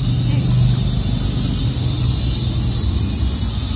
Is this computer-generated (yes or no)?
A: no